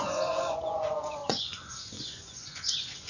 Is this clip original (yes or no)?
no